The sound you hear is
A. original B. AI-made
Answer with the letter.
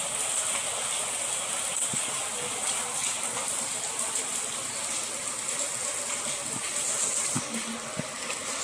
A